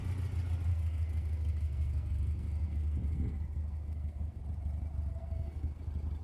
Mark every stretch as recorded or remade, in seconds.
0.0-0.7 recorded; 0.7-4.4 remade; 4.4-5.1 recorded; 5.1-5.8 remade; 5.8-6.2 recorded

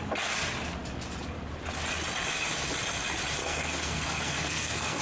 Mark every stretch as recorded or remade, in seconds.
0.0-3.4 recorded; 3.4-5.0 remade

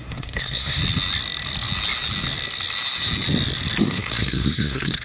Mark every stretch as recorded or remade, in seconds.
0.0-0.8 remade; 0.8-3.8 recorded; 3.8-5.0 remade